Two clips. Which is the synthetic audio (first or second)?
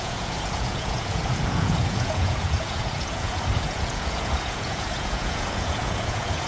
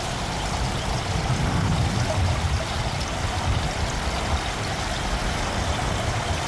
first